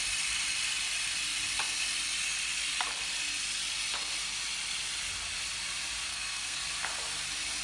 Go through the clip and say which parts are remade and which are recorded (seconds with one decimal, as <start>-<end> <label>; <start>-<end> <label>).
0.0-6.1 recorded; 6.1-6.6 remade; 6.6-7.6 recorded